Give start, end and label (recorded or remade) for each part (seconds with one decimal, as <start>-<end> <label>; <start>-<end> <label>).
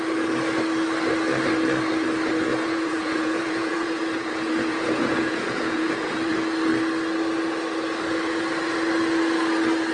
0.0-2.5 recorded; 2.5-6.3 remade; 6.3-9.9 recorded